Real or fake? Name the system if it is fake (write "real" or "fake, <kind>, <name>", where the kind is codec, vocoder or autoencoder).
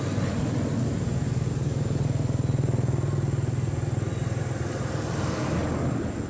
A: real